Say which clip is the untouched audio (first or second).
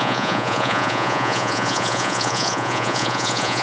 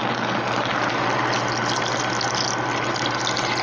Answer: second